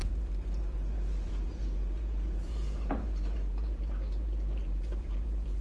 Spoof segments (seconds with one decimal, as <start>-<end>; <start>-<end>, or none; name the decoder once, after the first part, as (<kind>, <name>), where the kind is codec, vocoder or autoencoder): 0.0-5.6 (vocoder, BigVGAN v2)